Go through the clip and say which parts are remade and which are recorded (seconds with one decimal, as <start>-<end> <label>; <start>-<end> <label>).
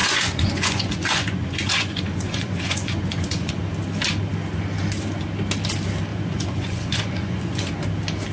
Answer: 0.0-3.6 remade; 3.6-6.1 recorded; 6.1-7.7 remade; 7.7-8.3 recorded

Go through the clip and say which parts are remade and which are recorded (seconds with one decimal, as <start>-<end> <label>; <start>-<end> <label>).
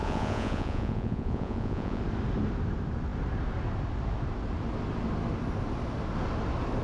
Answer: 0.0-2.0 remade; 2.0-6.8 recorded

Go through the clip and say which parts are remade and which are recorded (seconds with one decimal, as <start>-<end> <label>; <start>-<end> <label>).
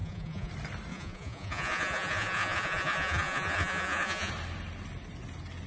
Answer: 0.0-0.5 remade; 0.5-0.9 recorded; 0.9-4.3 remade; 4.3-5.7 recorded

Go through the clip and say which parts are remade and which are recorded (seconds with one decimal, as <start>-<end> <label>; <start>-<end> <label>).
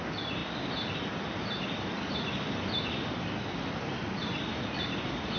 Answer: 0.0-5.4 recorded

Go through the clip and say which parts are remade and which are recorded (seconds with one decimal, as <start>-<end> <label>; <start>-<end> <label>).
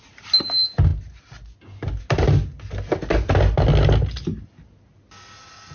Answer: 0.0-5.7 recorded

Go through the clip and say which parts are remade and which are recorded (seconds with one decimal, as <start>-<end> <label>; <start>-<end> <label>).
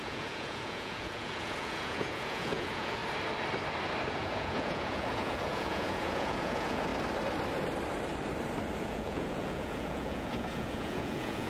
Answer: 0.0-3.0 remade; 3.0-4.1 recorded; 4.1-6.9 remade; 6.9-8.8 recorded; 8.8-11.5 remade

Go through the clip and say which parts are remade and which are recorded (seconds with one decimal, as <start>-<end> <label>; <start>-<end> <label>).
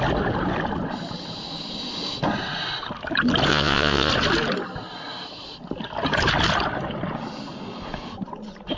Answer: 0.0-3.5 recorded; 3.5-4.1 remade; 4.1-8.8 recorded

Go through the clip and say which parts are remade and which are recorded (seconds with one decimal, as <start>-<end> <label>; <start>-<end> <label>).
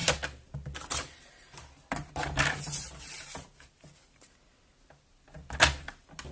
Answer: 0.0-6.3 recorded